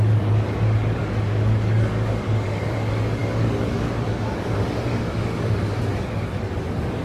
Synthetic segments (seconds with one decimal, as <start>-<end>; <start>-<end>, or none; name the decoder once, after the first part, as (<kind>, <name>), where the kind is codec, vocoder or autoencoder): 0.0-7.0 (codec, DAC)